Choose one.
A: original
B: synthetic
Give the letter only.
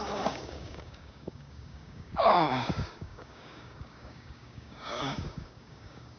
B